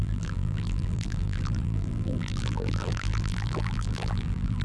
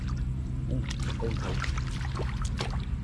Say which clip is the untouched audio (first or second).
second